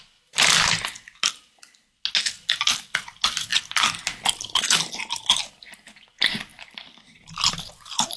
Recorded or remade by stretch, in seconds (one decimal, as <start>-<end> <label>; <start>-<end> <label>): 0.0-8.2 recorded